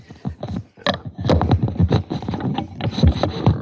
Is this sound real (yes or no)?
yes